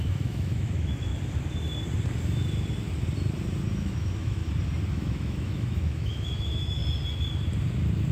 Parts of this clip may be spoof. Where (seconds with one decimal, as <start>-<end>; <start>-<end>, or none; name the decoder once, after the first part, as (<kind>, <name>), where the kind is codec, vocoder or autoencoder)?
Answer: 0.0-1.1 (autoencoder, DAC-VAE); 3.7-4.4; 4.9-6.8